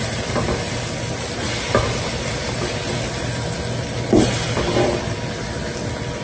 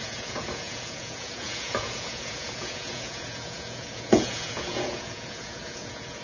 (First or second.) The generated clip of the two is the second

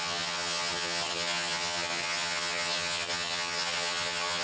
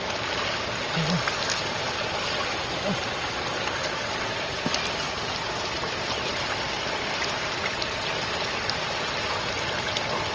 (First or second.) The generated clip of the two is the first